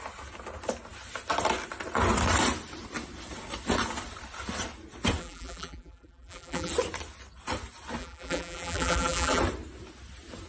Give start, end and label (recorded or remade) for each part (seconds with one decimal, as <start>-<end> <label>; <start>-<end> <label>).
0.0-5.2 recorded; 5.2-6.7 remade; 6.7-8.0 recorded; 8.0-9.4 remade; 9.4-10.5 recorded